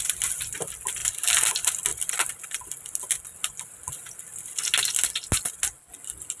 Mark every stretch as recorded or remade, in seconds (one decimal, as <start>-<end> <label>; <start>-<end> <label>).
0.0-6.4 recorded